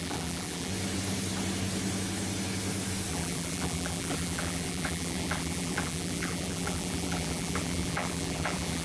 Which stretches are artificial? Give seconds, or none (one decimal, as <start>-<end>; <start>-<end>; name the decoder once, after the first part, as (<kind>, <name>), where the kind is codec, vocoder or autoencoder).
0.0-0.7 (vocoder, BigVGAN v2); 3.1-8.8